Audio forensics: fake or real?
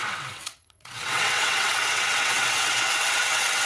fake